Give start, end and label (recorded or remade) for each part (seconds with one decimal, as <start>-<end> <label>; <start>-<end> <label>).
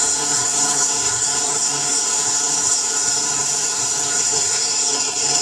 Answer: 0.0-5.4 remade